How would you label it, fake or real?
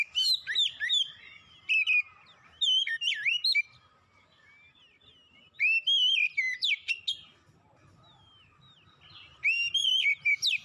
real